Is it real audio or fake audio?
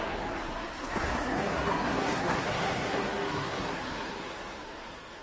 fake